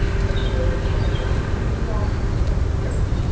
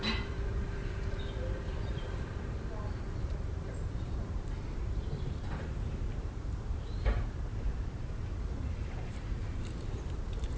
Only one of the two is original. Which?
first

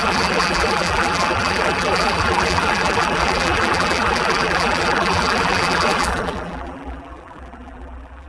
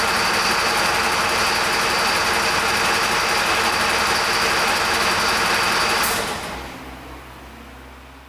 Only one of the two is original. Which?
second